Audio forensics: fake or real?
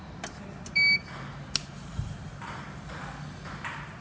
real